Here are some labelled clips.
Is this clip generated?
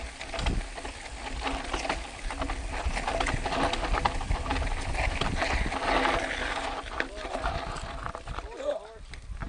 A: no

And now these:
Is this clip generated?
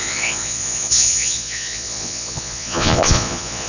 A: yes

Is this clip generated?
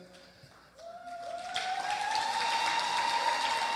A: no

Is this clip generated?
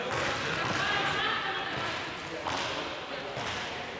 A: no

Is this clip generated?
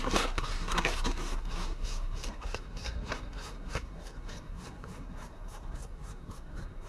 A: yes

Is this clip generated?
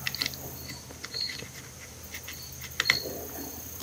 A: no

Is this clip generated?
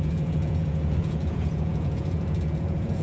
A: yes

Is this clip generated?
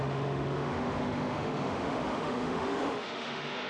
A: yes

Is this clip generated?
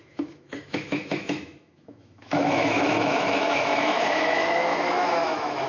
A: yes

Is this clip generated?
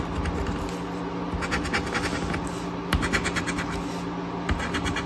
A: no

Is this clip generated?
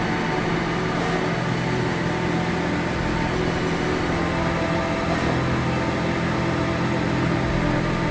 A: no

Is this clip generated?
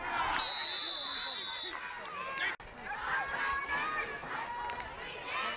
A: no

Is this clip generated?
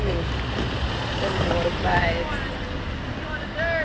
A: no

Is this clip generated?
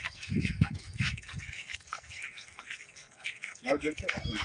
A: yes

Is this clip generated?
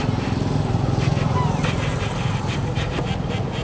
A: no